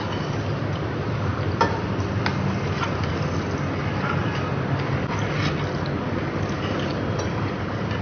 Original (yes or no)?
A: yes